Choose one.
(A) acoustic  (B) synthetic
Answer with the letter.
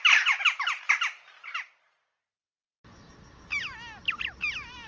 A